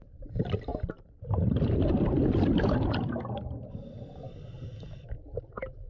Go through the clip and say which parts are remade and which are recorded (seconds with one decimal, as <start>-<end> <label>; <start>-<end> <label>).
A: 0.0-5.9 recorded